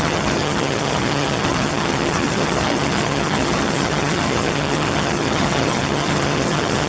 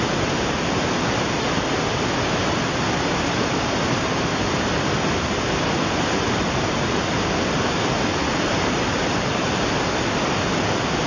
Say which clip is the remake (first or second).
first